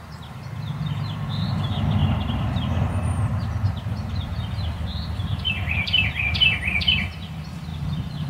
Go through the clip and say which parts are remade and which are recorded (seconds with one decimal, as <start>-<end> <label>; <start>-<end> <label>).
0.0-8.3 remade